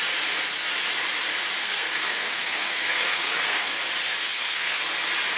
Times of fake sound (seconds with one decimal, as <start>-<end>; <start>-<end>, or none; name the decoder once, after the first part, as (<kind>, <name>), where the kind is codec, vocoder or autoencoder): 1.6-3.8 (codec, SNAC); 4.2-4.8